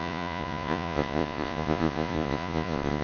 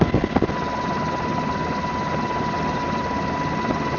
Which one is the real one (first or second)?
second